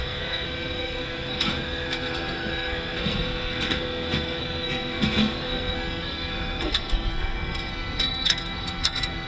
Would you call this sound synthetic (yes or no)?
yes